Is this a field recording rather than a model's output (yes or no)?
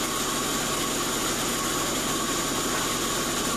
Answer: yes